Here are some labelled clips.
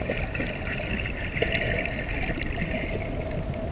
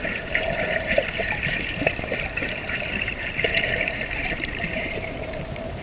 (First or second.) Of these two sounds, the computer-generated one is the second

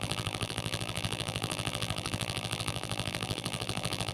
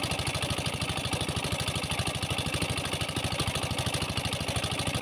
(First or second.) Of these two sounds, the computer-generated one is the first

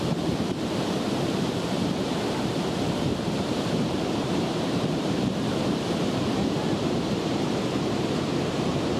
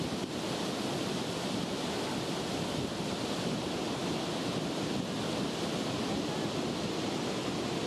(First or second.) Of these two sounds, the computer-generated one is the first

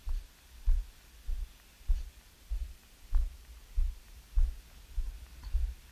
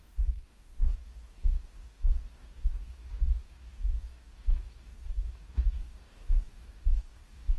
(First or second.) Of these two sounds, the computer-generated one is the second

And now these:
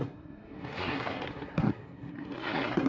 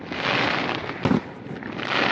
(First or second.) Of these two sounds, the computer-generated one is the first